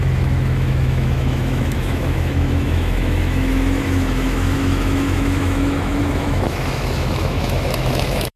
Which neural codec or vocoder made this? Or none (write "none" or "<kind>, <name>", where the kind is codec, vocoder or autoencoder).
autoencoder, DAC-VAE